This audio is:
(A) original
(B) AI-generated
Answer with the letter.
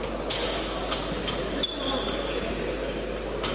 A